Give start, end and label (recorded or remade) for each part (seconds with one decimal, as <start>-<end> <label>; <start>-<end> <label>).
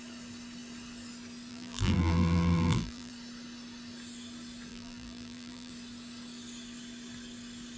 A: 0.0-1.5 recorded; 1.5-3.1 remade; 3.1-4.7 recorded; 4.7-5.7 remade; 5.7-7.8 recorded